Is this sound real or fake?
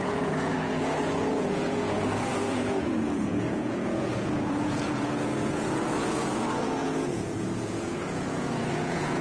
fake